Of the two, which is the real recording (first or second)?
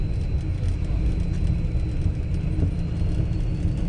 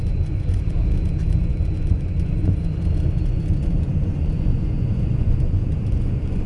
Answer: first